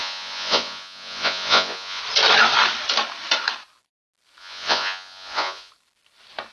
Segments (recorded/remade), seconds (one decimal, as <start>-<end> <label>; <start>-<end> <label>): 0.0-2.0 remade; 2.0-4.4 recorded; 4.4-5.7 remade; 5.7-6.5 recorded